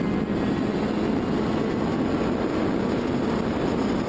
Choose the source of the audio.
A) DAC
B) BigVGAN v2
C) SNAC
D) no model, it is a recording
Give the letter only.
D